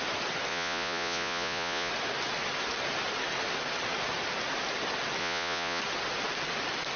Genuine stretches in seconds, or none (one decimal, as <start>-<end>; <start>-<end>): 0.0-0.5; 1.9-5.2; 5.8-7.0